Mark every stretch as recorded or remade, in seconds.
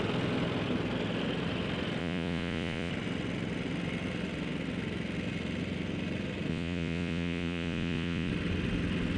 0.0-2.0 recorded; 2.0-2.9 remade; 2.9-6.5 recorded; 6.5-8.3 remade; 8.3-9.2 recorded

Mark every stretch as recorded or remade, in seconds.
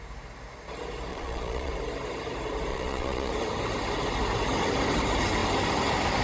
0.0-1.1 recorded; 1.1-1.7 remade; 1.7-2.7 recorded; 2.7-3.3 remade; 3.3-6.2 recorded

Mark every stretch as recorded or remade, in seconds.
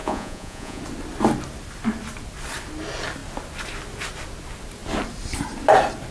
0.0-0.8 remade; 0.8-6.1 recorded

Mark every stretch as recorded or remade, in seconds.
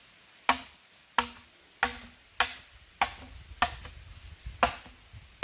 0.0-5.4 recorded